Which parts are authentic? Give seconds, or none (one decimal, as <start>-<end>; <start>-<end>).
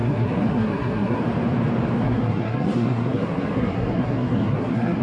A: 1.2-2.0